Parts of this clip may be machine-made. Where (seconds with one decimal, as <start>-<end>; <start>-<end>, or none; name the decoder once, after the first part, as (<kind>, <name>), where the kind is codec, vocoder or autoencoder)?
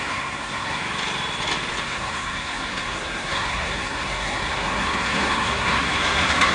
0.0-0.8 (codec, SNAC); 1.8-6.5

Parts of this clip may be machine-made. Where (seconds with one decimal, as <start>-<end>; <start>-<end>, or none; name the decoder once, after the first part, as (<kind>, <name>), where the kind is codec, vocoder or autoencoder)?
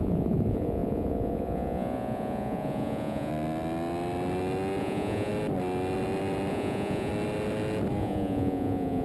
0.0-3.3 (vocoder, Vocos); 4.8-5.3; 6.5-7.1; 8.0-9.0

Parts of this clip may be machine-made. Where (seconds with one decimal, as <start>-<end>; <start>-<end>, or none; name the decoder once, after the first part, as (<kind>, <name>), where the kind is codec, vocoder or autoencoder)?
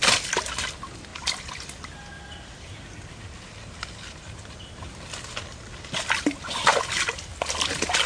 none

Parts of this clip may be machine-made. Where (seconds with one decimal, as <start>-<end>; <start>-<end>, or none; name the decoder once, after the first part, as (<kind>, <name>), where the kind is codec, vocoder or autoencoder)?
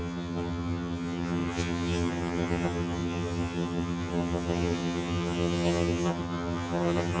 0.0-7.2 (vocoder, HiFi-GAN)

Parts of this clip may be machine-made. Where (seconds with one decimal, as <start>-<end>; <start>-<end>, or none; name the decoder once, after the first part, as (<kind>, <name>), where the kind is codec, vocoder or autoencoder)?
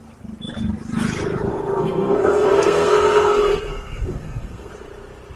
1.5-4.7 (codec, SNAC)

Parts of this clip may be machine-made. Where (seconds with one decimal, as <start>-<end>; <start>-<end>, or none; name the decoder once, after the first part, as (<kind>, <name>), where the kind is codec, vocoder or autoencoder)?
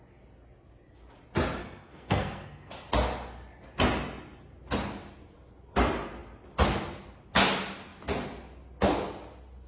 1.6-2.7 (codec, SNAC)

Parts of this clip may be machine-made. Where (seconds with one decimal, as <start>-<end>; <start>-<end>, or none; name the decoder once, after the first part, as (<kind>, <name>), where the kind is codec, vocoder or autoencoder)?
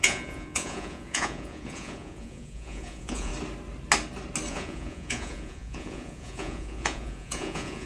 0.0-3.3 (vocoder, Vocos); 4.5-7.9